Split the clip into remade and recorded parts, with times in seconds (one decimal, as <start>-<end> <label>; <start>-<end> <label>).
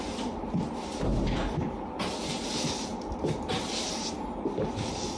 0.0-5.2 recorded